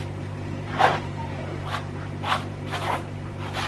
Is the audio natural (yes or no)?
no